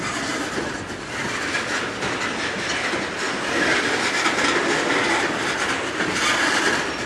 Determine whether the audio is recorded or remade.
recorded